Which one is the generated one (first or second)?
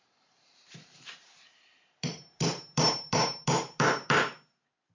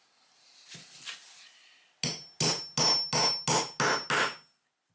first